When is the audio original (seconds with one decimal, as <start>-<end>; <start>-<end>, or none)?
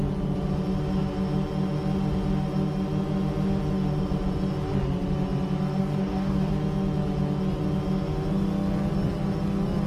0.0-5.8; 6.5-9.9